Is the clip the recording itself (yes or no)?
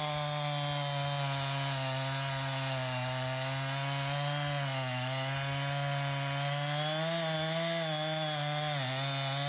yes